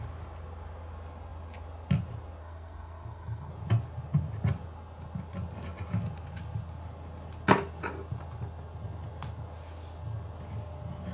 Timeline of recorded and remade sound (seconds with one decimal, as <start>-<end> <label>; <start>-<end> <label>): 0.0-2.4 recorded; 2.4-3.5 remade; 3.5-11.1 recorded